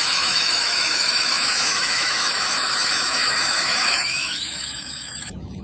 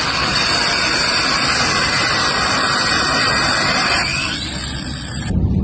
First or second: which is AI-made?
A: first